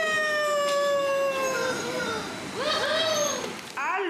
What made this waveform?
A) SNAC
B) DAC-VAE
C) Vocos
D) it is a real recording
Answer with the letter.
D